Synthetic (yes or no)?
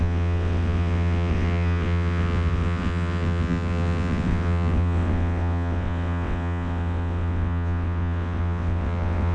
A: yes